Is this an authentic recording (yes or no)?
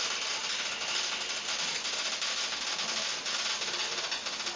yes